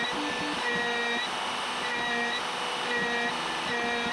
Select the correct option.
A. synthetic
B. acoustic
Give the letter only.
B